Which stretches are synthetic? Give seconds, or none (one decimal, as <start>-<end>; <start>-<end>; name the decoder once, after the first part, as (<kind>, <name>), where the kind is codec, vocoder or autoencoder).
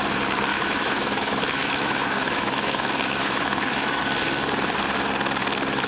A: 0.5-4.0 (autoencoder, DAC-VAE)